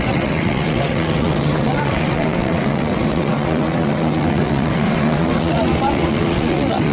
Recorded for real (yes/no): no